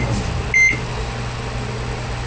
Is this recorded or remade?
recorded